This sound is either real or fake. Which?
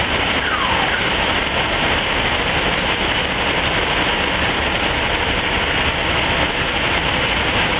real